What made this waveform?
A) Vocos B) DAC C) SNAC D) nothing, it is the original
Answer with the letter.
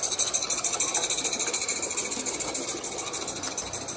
D